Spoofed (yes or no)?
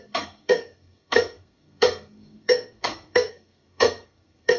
yes